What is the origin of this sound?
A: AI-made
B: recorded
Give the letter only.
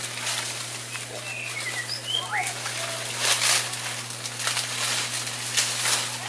B